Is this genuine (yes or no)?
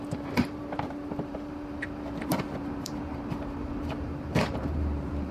no